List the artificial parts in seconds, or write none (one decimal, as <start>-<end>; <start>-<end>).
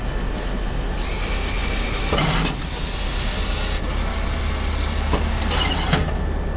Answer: none